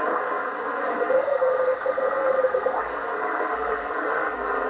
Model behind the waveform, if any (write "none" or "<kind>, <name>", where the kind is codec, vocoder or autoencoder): codec, SNAC